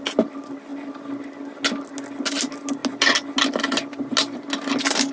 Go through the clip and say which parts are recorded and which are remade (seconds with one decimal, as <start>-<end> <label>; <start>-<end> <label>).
0.0-5.1 recorded